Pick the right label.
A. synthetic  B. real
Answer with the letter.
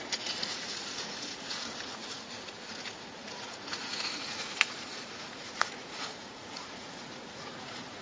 A